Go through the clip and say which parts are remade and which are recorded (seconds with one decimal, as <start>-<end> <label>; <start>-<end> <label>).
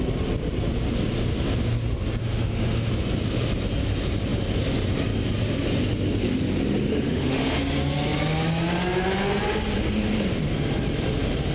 0.0-2.2 recorded; 2.2-2.9 remade; 2.9-6.9 recorded; 6.9-7.6 remade; 7.6-11.5 recorded